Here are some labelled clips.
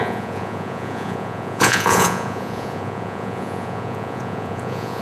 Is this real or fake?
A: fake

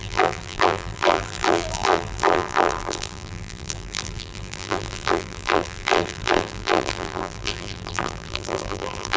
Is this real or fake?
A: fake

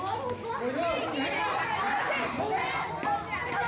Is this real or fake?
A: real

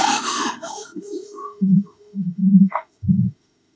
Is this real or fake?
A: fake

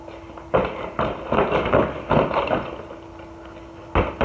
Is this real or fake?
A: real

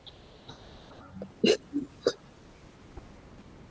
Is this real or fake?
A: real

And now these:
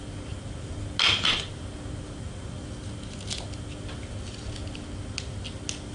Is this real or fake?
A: real